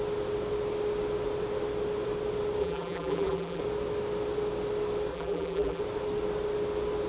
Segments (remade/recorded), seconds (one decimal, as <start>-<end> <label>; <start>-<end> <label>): 0.0-2.6 recorded; 2.6-3.6 remade; 3.6-5.1 recorded; 5.1-5.8 remade; 5.8-7.1 recorded